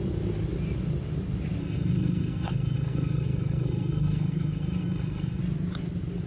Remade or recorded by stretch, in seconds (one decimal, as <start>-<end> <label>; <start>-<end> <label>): 0.0-1.6 recorded; 1.6-5.4 remade; 5.4-6.3 recorded